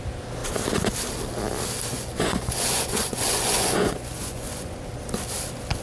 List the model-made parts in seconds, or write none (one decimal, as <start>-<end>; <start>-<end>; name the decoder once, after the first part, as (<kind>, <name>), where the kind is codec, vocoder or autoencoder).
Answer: 1.9-4.8 (vocoder, Vocos)